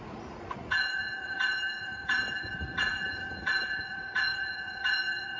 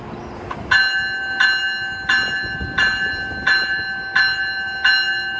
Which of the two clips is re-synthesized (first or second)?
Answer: first